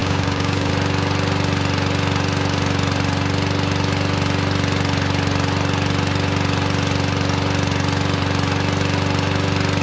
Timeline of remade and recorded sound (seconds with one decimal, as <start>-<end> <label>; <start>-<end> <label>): 0.0-0.7 remade; 0.7-9.8 recorded